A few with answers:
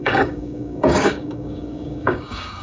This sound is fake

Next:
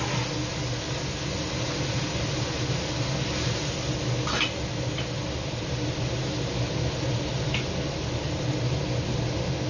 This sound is real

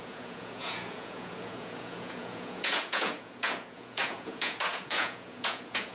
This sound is fake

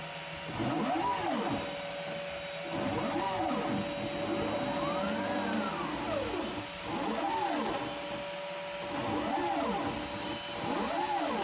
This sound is real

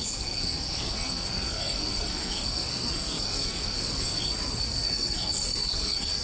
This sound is fake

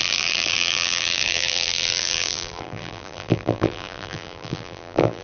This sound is fake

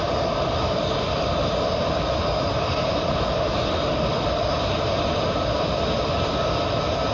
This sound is real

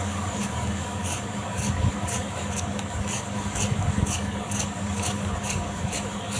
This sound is fake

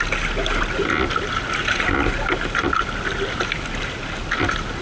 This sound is real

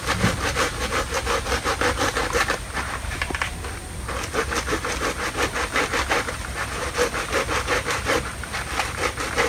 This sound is real